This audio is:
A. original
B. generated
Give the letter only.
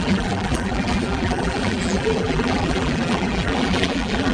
B